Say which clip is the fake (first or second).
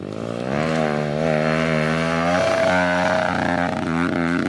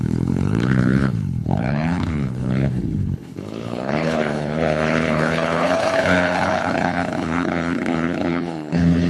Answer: second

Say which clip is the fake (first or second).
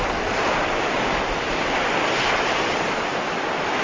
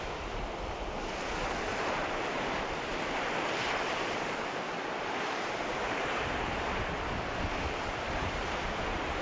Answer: second